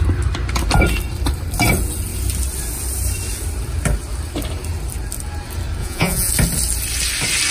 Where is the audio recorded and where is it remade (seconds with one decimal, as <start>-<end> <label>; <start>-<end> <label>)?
0.0-5.8 recorded; 5.8-6.3 remade; 6.3-7.5 recorded